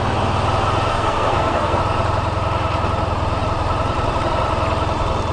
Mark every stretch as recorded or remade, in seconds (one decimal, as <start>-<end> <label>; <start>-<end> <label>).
0.0-0.9 recorded; 0.9-1.8 remade; 1.8-5.3 recorded